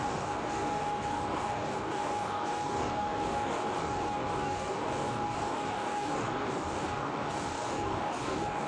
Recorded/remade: remade